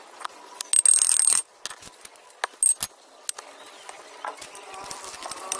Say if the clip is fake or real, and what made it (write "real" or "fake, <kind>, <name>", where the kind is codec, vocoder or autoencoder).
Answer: real